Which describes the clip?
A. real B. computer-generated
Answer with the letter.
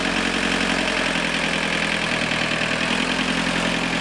A